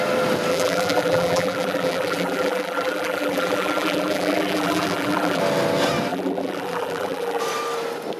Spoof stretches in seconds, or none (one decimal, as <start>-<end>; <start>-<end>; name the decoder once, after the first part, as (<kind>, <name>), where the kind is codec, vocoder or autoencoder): 0.5-5.4 (vocoder, BigVGAN v2); 6.1-7.4